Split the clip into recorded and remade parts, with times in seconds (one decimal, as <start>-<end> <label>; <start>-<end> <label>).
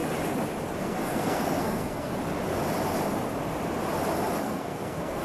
0.0-0.8 recorded; 0.8-2.1 remade; 2.1-4.4 recorded; 4.4-5.2 remade